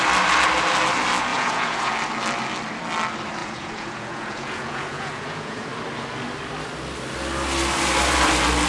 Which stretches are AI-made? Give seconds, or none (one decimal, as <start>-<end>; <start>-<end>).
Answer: 1.3-1.9; 3.4-5.7